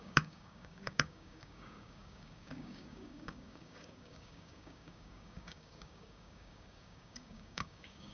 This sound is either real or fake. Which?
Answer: fake